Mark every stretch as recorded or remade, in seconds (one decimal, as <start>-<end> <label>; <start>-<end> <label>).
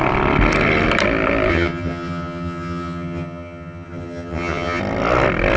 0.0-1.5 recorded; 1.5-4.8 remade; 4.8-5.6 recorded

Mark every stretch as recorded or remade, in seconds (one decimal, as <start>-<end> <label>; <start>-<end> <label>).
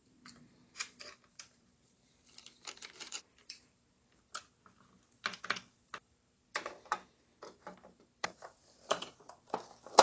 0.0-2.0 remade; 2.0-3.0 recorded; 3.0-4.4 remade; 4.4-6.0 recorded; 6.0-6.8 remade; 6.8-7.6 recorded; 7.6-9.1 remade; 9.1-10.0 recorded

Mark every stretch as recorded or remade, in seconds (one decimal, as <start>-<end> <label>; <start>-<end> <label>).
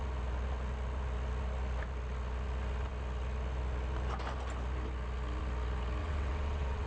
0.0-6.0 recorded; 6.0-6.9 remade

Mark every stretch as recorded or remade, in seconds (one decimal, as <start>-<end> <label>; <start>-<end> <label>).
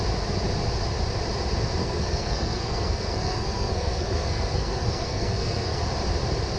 0.0-1.8 recorded; 1.8-5.8 remade; 5.8-6.6 recorded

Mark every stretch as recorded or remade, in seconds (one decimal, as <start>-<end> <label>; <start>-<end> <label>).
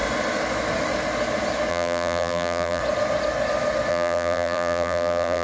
0.0-1.7 recorded; 1.7-2.8 remade; 2.8-3.9 recorded; 3.9-5.4 remade